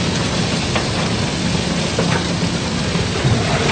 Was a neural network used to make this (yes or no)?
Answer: no